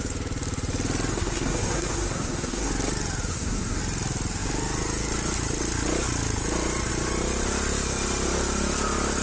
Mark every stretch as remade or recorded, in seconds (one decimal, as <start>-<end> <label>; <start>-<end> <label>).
0.0-1.1 recorded; 1.1-2.7 remade; 2.7-3.3 recorded; 3.3-3.8 remade; 3.8-9.2 recorded